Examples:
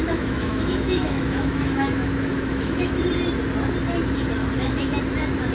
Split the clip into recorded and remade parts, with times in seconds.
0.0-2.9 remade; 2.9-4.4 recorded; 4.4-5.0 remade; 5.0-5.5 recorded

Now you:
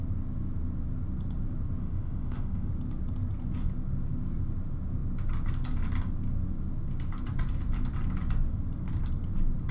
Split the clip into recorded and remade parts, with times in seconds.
0.0-1.8 recorded; 1.8-2.7 remade; 2.7-9.7 recorded

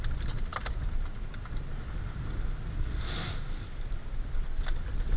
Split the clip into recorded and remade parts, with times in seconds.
0.0-5.2 recorded

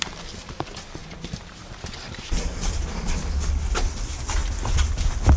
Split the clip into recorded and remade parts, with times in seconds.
0.0-1.0 recorded; 1.0-3.0 remade; 3.0-5.4 recorded

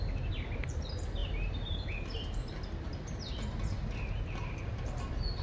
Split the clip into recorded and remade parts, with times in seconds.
0.0-5.4 recorded